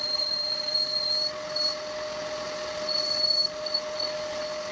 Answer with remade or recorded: recorded